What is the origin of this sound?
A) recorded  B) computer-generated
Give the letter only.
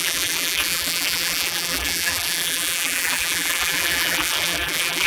B